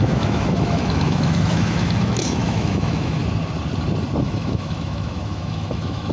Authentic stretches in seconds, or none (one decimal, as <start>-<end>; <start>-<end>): 3.2-4.2